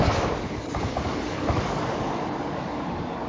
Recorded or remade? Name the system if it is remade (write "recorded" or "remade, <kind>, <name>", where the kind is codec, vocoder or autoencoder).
remade, codec, DAC